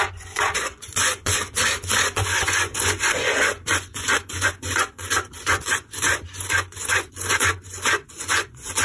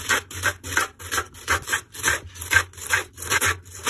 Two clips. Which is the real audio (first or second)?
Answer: second